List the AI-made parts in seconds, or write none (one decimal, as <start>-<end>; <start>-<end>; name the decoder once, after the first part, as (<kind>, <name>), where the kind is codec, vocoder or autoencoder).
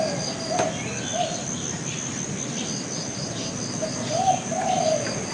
none